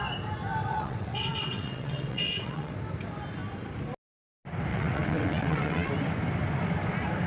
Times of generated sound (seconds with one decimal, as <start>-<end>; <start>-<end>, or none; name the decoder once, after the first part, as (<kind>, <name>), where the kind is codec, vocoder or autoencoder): 0.7-2.7 (vocoder, WaveNeXt); 4.7-5.9